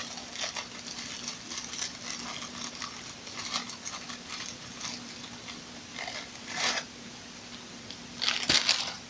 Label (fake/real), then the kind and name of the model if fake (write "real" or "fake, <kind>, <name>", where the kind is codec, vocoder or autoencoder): real